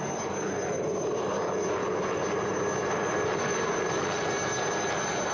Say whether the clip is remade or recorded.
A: recorded